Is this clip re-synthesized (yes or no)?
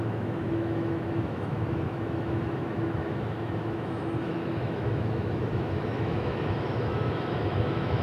yes